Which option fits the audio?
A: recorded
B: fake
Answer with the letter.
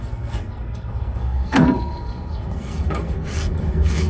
B